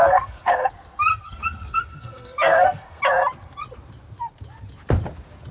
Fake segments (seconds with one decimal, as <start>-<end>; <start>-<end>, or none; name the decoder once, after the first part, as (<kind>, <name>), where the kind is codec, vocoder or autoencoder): 0.0-0.7 (codec, SNAC); 1.1-3.0